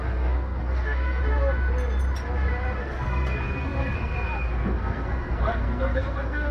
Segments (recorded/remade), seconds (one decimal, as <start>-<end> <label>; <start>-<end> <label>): 0.0-1.2 remade; 1.2-2.8 recorded; 2.8-6.5 remade